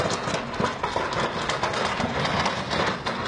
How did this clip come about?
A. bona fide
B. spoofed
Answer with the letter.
A